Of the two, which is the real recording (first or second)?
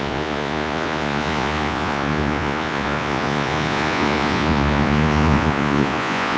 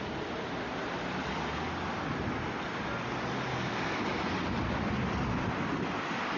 second